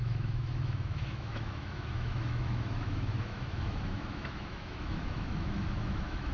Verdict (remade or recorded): remade